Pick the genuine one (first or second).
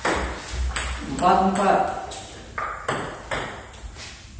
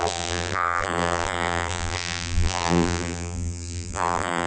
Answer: first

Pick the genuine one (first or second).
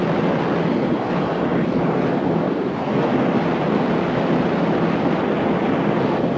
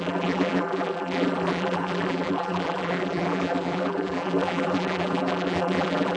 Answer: first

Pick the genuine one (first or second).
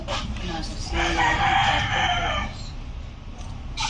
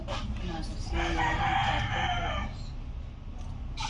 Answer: second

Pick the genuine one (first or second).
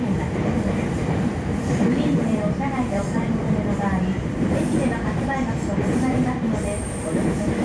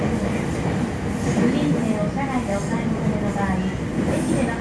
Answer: second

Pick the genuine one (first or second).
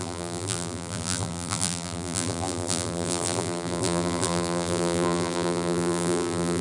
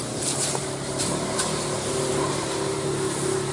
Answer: second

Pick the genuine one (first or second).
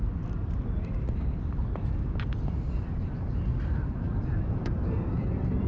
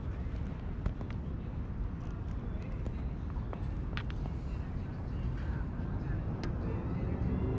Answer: second